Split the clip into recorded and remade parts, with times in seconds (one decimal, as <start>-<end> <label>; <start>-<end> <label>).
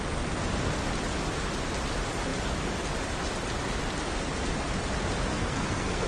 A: 0.0-5.3 recorded; 5.3-6.1 remade